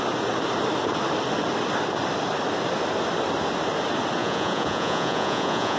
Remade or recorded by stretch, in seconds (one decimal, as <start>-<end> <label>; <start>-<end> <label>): 0.0-4.2 recorded; 4.2-5.8 remade